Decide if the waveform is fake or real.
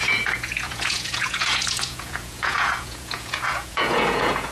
fake